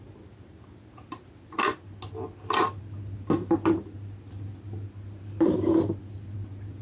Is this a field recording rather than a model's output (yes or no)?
yes